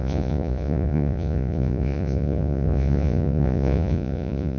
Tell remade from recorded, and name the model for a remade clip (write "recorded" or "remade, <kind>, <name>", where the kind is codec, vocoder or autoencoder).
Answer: remade, vocoder, Vocos